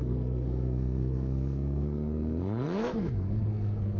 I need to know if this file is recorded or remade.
remade